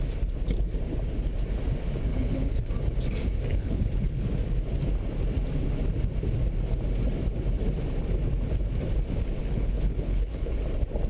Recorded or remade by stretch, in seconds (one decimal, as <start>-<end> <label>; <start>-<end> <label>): 0.0-2.1 recorded; 2.1-2.7 remade; 2.7-3.5 recorded; 3.5-4.3 remade; 4.3-9.4 recorded; 9.4-10.5 remade; 10.5-11.1 recorded